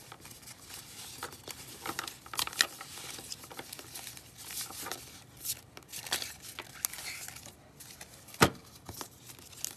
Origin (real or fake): real